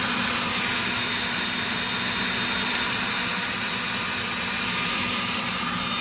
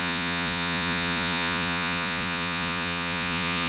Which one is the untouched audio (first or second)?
first